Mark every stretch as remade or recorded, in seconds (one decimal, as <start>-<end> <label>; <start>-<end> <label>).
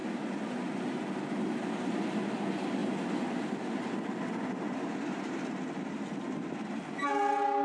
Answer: 0.0-7.6 recorded